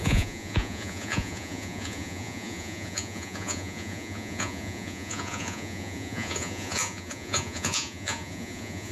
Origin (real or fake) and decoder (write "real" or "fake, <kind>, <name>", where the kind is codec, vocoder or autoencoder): fake, vocoder, Vocos